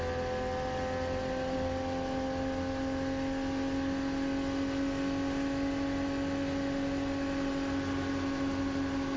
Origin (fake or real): real